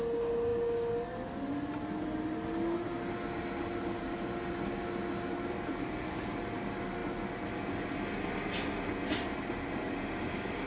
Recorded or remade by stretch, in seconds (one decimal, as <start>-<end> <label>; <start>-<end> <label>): 0.0-10.7 recorded

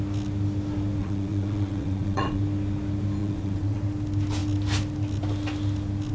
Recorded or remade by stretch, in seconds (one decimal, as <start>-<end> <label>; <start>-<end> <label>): 0.0-1.0 recorded; 1.0-2.4 remade; 2.4-3.2 recorded; 3.2-3.8 remade; 3.8-6.1 recorded

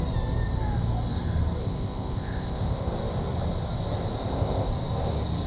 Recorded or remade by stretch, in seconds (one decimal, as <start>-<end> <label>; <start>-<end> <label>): 0.0-1.6 recorded; 1.6-2.9 remade; 2.9-4.2 recorded; 4.2-4.7 remade; 4.7-5.5 recorded

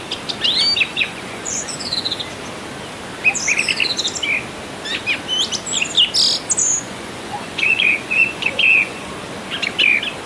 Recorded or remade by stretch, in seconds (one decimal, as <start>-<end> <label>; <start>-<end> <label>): 0.0-0.9 recorded; 0.9-2.1 remade; 2.1-6.6 recorded; 6.6-9.1 remade; 9.1-10.3 recorded

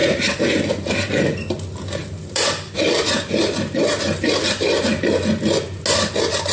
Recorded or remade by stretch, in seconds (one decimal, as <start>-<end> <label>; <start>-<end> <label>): 0.0-0.7 remade; 0.7-2.0 recorded; 2.0-4.5 remade; 4.5-6.5 recorded

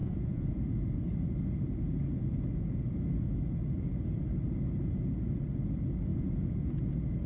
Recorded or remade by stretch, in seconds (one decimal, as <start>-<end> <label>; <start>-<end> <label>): 0.0-0.8 remade; 0.8-6.1 recorded; 6.1-7.3 remade